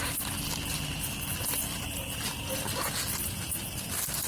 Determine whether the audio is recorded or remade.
recorded